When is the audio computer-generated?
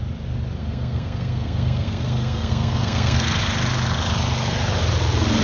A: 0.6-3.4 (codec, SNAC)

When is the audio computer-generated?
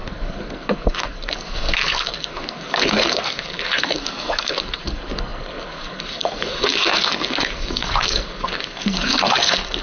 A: 0.0-9.8 (codec, SNAC)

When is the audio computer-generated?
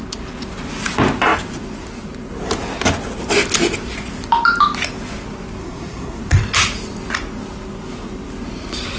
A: 5.6-6.2 (codec, SNAC)